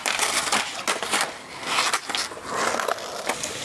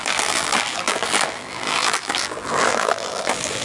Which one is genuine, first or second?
first